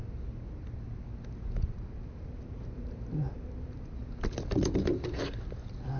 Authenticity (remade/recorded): recorded